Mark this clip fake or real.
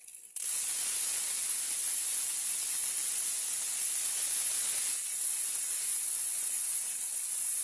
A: real